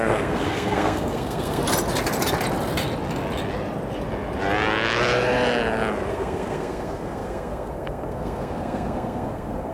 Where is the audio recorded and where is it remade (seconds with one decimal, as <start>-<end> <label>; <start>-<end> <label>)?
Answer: 0.0-1.6 remade; 1.6-6.1 recorded; 6.1-9.7 remade